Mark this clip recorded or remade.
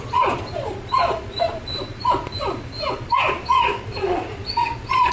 remade